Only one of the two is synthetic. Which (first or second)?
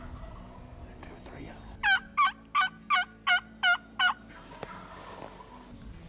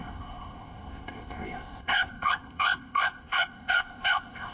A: second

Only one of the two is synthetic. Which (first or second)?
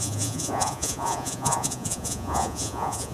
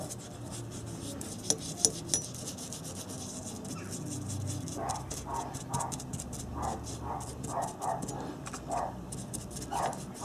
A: first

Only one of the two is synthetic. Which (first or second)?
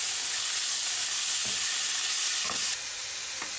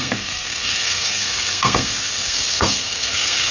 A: second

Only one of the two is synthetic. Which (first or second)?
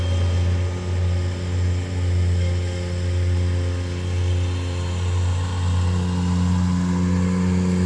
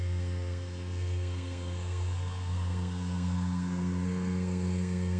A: second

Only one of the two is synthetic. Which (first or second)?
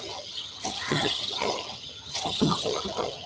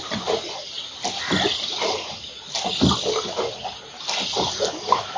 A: first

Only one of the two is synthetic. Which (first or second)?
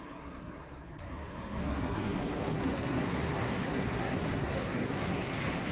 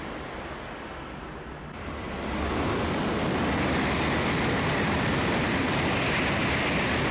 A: first